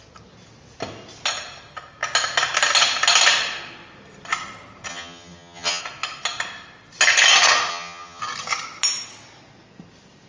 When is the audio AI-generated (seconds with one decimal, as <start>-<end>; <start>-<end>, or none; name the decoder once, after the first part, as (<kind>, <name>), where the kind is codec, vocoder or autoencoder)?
4.9-5.8 (vocoder, HiFi-GAN); 7.7-8.2